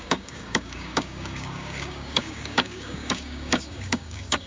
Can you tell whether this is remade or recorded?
remade